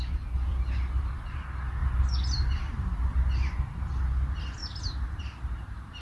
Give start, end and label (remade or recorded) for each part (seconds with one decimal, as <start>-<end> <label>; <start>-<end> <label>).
0.0-0.5 recorded; 0.5-1.0 remade; 1.0-6.0 recorded